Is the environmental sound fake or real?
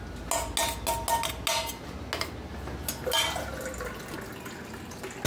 real